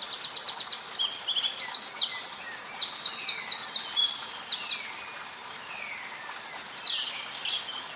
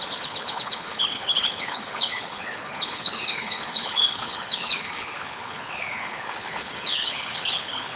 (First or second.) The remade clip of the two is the second